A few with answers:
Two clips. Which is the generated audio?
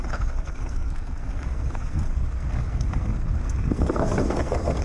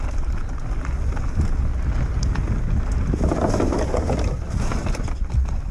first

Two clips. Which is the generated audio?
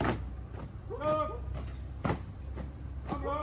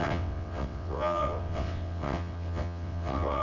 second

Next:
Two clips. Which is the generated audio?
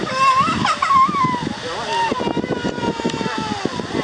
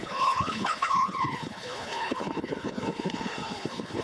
second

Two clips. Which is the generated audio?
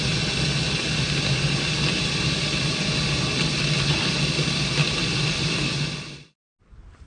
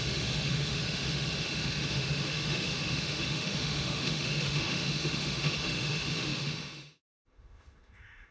second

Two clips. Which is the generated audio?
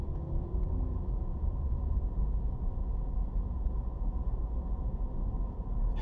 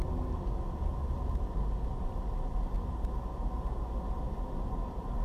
first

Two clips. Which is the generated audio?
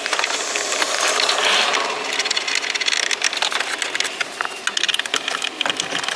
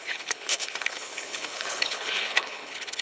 second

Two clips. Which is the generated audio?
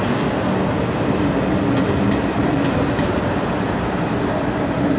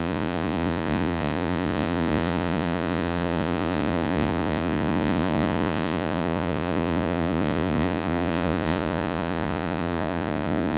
second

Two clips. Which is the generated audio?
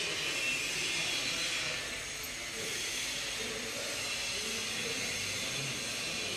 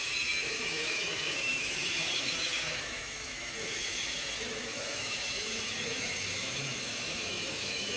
second